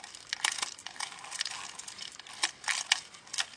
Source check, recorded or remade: recorded